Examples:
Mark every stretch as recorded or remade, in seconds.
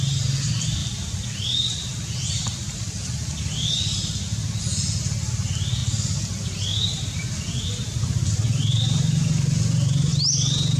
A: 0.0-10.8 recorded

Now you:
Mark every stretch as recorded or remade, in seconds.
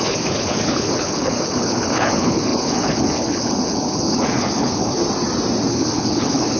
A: 0.0-5.0 remade; 5.0-5.7 recorded; 5.7-6.6 remade